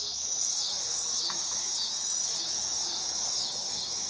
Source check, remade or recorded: remade